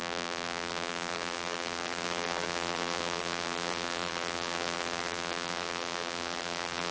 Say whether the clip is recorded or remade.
remade